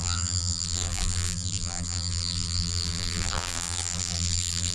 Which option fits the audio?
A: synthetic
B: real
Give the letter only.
A